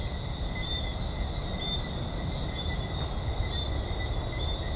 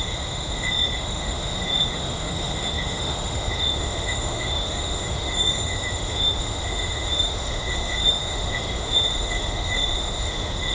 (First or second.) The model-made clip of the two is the second